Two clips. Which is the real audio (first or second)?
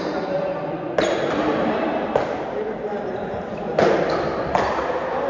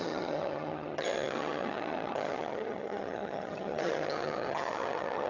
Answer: first